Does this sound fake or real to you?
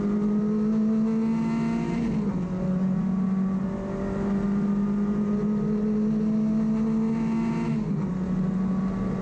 real